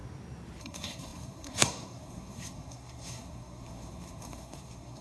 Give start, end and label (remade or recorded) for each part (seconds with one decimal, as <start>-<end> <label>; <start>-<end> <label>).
0.0-0.6 recorded; 0.6-5.0 remade